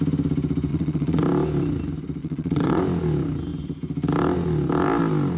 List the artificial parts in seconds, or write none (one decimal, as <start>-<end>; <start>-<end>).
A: 0.7-1.2; 2.2-2.8